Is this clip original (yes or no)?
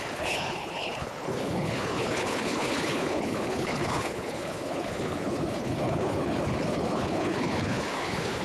no